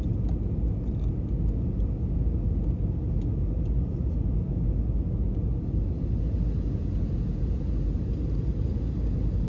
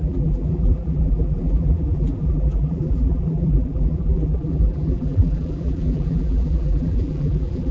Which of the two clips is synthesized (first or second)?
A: second